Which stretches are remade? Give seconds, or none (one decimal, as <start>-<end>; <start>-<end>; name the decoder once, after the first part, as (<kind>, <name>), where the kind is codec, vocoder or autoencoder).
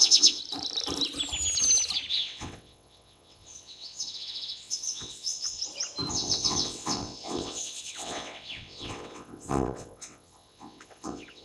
0.0-0.4 (vocoder, WaveNeXt); 2.1-5.6; 6.1-11.4